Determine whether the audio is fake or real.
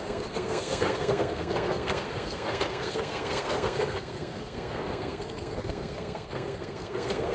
fake